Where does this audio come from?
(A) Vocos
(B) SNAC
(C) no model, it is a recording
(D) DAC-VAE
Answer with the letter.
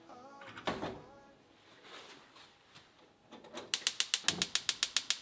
C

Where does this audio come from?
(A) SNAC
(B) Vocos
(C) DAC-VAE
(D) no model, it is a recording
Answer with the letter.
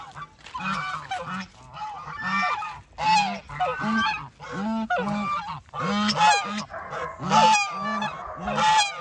D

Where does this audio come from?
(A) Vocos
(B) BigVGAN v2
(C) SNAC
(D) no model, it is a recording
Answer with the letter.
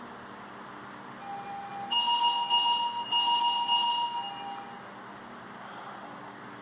D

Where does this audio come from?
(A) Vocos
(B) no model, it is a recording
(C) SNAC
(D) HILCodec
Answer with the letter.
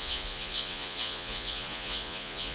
A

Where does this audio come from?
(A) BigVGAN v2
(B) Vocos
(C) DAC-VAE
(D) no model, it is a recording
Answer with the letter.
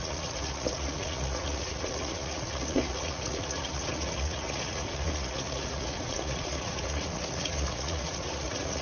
B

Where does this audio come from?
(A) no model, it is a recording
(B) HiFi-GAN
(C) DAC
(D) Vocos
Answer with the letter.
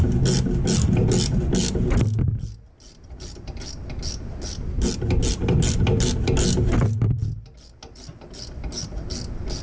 A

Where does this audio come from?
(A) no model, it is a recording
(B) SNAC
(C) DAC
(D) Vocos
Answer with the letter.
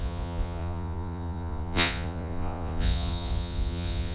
D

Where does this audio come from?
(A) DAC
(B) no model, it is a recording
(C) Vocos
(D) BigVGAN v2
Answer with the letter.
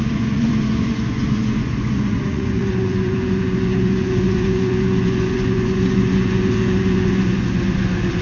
C